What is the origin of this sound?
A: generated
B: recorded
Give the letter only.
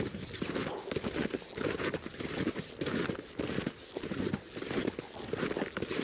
B